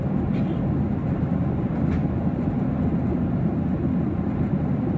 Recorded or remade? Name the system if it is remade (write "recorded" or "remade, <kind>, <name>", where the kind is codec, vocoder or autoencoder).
recorded